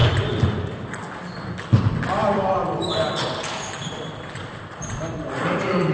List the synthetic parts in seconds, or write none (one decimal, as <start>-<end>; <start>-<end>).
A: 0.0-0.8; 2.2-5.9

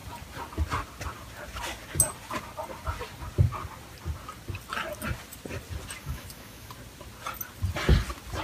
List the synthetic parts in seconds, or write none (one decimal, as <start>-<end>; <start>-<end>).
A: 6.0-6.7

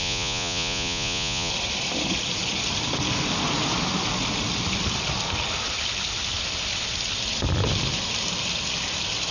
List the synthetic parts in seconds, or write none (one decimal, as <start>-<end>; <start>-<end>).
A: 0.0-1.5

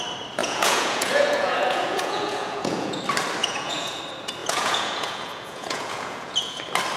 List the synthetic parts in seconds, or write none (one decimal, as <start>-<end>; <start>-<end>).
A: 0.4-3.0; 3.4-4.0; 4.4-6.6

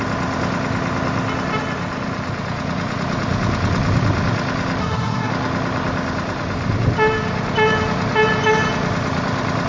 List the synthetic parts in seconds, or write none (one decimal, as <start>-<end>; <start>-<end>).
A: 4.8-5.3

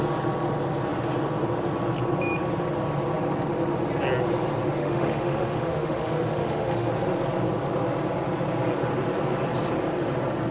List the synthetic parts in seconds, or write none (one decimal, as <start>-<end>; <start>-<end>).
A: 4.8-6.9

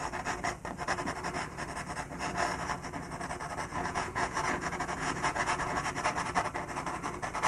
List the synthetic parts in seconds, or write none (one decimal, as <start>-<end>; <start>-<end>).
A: 3.7-5.9